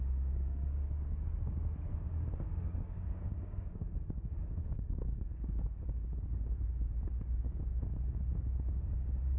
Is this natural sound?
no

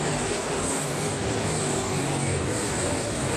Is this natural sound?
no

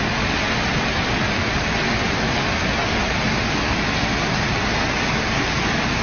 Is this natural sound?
yes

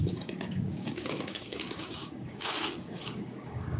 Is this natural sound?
no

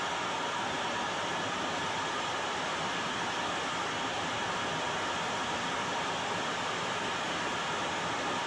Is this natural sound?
yes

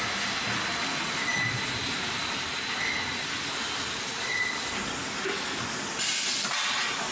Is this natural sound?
yes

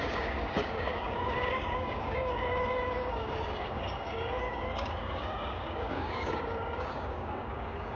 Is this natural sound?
no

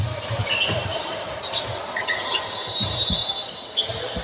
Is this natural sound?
yes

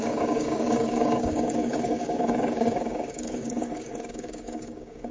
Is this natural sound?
no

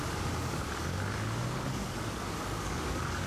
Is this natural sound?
no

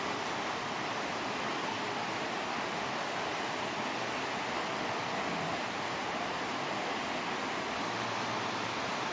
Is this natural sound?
yes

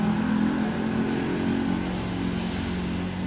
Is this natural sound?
yes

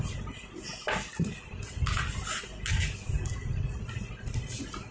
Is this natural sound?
yes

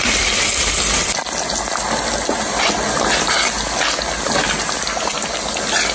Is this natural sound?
yes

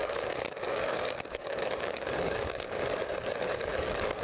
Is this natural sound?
no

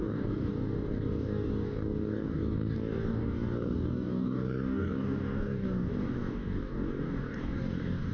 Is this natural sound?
no